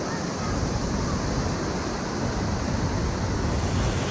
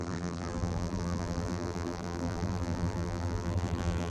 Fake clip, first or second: second